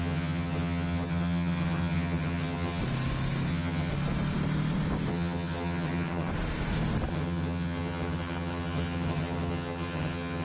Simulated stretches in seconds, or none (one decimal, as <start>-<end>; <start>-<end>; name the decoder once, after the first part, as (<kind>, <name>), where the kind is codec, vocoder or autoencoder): 0.0-2.8 (vocoder, HiFi-GAN); 3.5-3.9; 5.1-6.3; 7.1-10.4